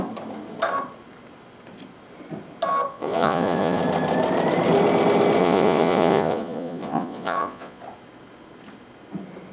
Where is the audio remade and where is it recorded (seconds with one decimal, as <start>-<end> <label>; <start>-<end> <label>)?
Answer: 0.0-2.9 recorded; 2.9-3.8 remade; 3.8-5.4 recorded; 5.4-7.8 remade; 7.8-9.5 recorded